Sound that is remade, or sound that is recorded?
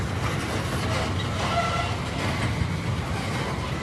recorded